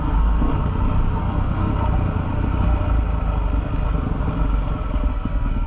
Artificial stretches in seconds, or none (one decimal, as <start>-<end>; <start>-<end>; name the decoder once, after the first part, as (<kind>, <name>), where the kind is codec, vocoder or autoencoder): 0.0-0.5 (codec, SNAC); 1.2-1.7; 5.1-5.7